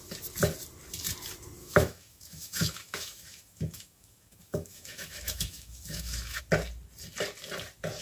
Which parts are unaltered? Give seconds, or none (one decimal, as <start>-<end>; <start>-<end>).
0.0-1.6; 6.4-8.0